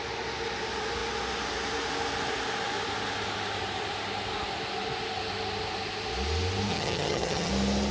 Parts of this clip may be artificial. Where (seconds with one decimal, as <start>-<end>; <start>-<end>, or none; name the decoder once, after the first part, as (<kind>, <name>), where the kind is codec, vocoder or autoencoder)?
6.7-7.5 (vocoder, HiFi-GAN)